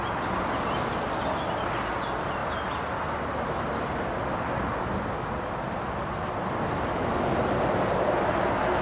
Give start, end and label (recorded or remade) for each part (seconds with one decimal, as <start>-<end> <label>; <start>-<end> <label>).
0.0-8.8 recorded